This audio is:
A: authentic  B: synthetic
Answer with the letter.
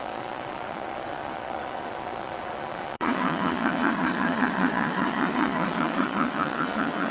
B